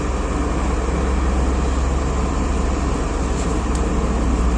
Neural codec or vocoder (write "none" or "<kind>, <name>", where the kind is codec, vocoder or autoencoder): none